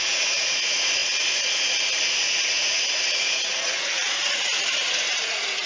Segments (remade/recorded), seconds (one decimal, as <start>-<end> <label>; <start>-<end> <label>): 0.0-5.7 remade

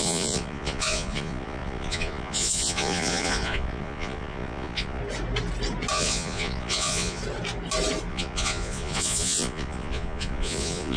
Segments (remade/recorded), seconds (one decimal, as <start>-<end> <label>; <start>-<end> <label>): 0.0-5.0 remade; 5.0-5.9 recorded; 5.9-7.2 remade; 7.2-8.1 recorded; 8.1-11.0 remade

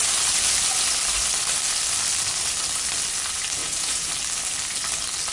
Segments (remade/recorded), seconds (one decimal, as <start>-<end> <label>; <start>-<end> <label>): 0.0-3.6 recorded; 3.6-4.1 remade; 4.1-5.3 recorded